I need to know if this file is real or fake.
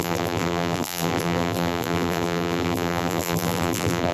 fake